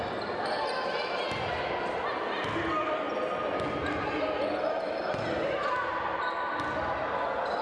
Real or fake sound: real